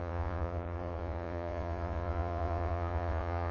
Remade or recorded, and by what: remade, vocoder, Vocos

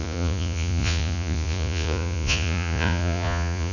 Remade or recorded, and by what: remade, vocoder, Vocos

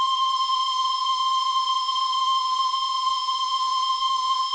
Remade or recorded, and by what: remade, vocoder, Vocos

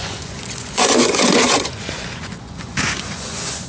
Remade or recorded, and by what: remade, vocoder, Vocos